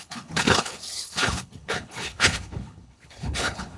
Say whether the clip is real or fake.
fake